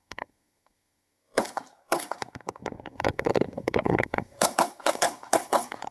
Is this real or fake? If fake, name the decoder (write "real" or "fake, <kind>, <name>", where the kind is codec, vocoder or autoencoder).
fake, codec, SNAC